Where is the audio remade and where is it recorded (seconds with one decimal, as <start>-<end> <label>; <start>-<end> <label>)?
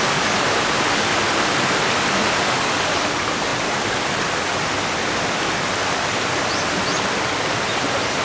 0.0-8.2 recorded